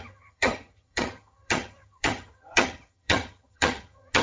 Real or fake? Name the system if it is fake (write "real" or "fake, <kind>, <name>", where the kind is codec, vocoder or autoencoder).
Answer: fake, vocoder, HiFi-GAN